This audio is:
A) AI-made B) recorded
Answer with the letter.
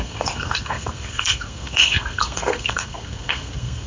A